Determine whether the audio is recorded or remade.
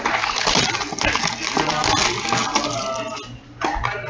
recorded